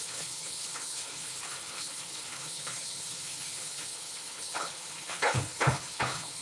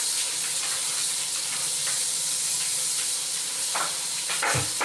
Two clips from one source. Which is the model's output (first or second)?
first